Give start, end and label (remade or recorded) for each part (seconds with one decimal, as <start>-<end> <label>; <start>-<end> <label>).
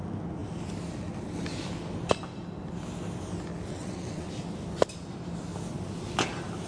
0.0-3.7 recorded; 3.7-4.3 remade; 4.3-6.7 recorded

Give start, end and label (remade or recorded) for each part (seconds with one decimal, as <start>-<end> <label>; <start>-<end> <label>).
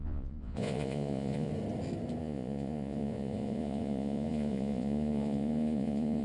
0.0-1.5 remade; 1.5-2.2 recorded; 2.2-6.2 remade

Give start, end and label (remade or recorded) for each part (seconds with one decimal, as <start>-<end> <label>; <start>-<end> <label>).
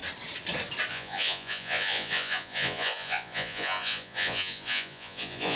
0.0-0.9 recorded; 0.9-5.6 remade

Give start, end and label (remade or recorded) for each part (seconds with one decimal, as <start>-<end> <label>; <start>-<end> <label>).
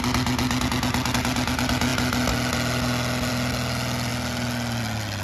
0.0-5.2 recorded